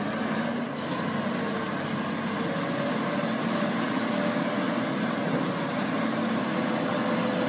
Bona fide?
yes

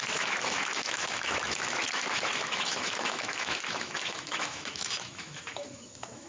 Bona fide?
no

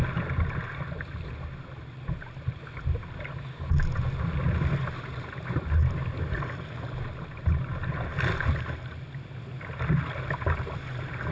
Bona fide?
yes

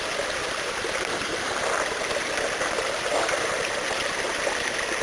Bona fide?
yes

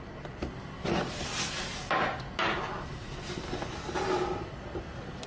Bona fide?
yes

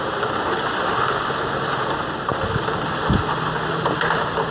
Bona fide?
yes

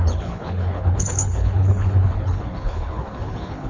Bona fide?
no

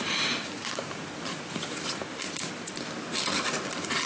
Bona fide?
yes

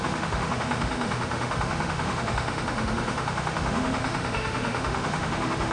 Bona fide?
no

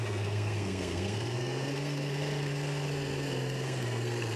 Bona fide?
no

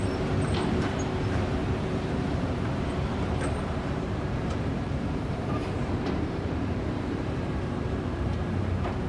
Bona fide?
no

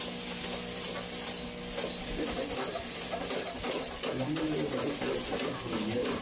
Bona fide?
yes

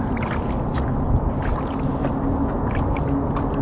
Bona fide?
yes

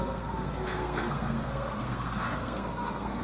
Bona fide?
no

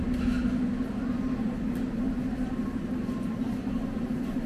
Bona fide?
yes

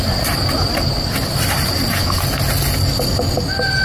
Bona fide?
yes